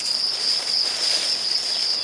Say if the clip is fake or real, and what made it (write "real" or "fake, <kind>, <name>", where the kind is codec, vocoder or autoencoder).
real